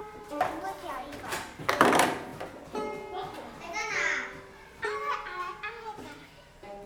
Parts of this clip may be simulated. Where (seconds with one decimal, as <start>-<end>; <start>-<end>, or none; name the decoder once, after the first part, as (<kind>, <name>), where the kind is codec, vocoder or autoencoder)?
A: 0.0-2.3 (vocoder, BigVGAN v2); 4.5-6.9